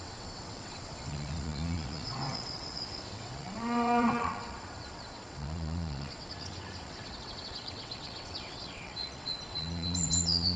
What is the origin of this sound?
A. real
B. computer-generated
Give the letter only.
B